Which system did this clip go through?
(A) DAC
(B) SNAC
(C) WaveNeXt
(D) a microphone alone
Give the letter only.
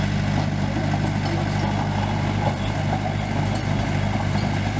D